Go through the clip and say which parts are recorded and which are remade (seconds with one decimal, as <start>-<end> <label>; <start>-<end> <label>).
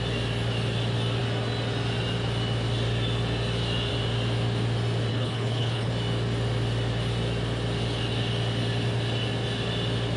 0.0-5.1 recorded; 5.1-5.9 remade; 5.9-10.2 recorded